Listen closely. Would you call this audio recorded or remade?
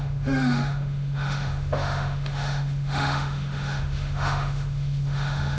remade